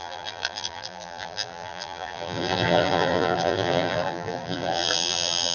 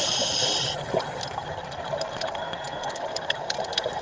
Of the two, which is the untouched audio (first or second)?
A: second